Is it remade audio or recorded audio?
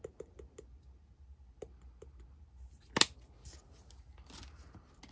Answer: recorded